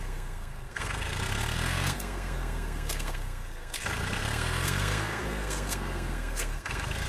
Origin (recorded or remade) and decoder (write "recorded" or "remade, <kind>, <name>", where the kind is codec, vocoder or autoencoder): remade, codec, SNAC